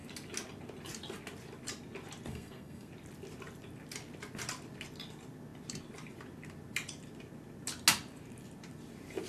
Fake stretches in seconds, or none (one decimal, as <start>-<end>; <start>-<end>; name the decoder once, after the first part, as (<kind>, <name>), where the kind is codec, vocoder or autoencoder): 2.3-2.9 (codec, SNAC)